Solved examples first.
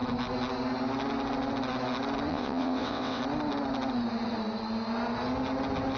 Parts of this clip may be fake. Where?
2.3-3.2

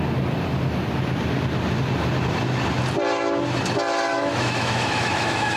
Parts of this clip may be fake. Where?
4.1-5.6

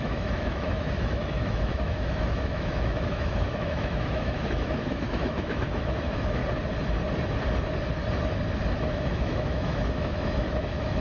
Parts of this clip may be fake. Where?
0.0-6.4; 8.9-11.0

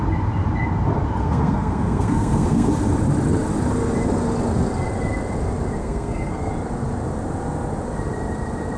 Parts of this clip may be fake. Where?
1.2-2.7; 5.8-6.5

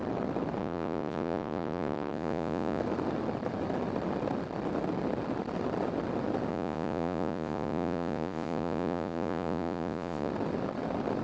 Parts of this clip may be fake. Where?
0.6-2.8; 6.5-10.3

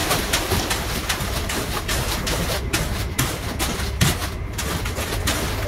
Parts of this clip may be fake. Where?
0.0-0.6; 1.0-3.6; 4.2-4.8